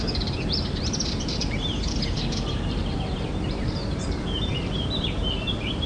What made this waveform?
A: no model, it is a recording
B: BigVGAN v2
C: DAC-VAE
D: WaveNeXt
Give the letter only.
B